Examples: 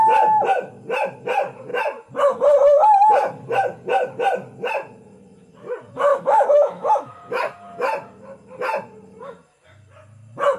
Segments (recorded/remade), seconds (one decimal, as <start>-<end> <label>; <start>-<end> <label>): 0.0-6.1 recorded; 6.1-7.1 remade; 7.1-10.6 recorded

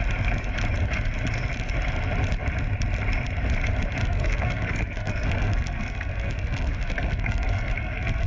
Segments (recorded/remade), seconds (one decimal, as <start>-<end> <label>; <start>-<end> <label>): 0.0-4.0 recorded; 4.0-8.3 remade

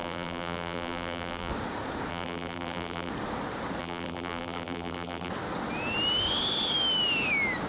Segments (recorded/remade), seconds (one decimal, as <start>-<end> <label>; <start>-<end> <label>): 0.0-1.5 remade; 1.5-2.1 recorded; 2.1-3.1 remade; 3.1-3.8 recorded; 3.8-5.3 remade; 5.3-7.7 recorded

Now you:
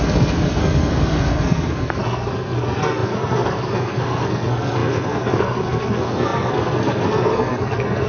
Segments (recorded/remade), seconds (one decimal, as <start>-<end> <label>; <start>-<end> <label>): 0.0-8.1 remade

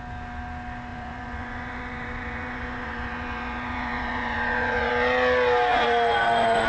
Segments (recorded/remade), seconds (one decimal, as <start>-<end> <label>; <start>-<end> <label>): 0.0-0.9 recorded; 0.9-4.9 remade; 4.9-5.7 recorded; 5.7-6.7 remade